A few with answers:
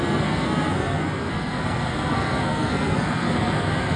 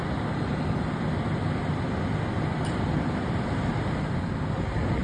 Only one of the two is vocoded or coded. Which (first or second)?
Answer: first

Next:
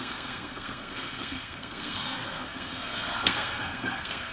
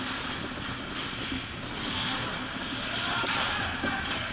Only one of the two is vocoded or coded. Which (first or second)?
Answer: first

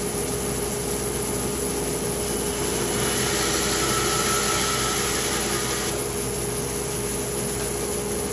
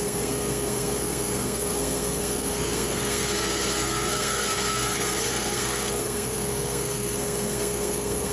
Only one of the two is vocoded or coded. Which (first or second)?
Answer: second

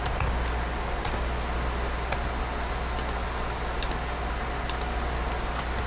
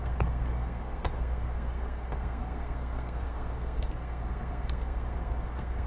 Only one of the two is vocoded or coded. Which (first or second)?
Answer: second